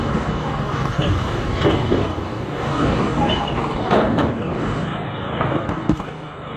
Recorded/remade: remade